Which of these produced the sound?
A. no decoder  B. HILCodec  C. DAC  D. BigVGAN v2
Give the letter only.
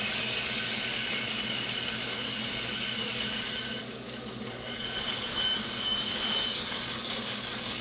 C